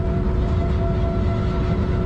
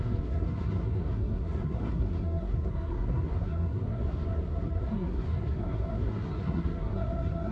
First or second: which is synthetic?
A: second